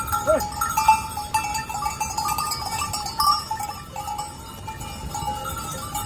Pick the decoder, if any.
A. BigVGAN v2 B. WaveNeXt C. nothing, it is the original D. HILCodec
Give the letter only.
C